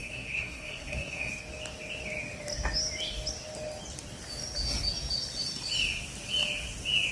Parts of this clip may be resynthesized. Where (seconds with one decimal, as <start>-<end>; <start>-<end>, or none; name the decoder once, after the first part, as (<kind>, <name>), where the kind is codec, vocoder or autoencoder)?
0.0-1.3 (codec, SNAC)